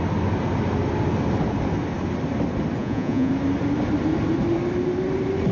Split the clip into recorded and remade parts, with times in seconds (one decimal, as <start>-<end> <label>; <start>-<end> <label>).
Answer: 0.0-2.8 recorded; 2.8-3.3 remade; 3.3-5.5 recorded